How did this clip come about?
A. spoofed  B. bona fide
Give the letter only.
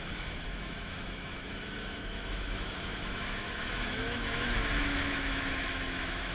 A